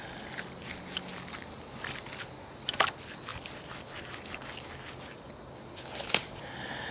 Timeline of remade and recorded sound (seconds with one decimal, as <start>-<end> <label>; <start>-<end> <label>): 0.0-6.9 recorded